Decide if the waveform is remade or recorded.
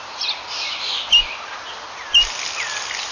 recorded